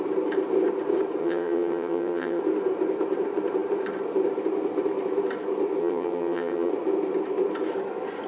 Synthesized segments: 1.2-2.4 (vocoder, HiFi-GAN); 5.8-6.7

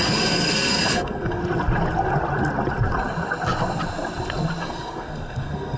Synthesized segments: 0.0-1.4 (codec, SNAC); 4.6-5.8

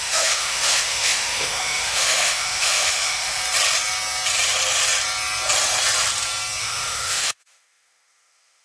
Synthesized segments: 0.0-3.4 (autoencoder, DAC-VAE); 6.6-8.6

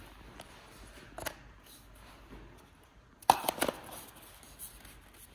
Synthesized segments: none